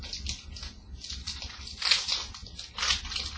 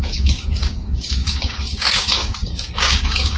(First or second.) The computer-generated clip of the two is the second